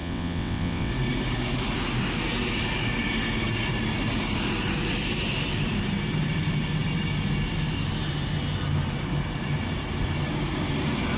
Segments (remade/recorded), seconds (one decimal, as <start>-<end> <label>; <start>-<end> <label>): 0.0-0.9 remade; 0.9-11.2 recorded